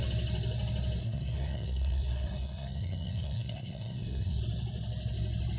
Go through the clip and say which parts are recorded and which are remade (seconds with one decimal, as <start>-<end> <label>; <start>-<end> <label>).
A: 0.0-1.0 recorded; 1.0-4.4 remade; 4.4-5.6 recorded